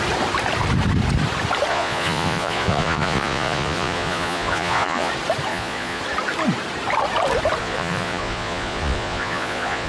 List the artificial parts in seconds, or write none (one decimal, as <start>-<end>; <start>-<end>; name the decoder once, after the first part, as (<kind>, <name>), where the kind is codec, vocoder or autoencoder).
1.7-5.1 (vocoder, Vocos); 5.5-6.0; 7.6-9.9